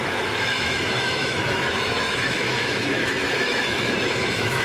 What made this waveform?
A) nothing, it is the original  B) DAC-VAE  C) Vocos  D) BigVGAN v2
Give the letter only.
B